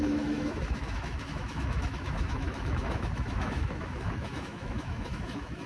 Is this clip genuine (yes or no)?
no